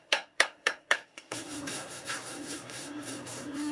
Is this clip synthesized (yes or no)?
yes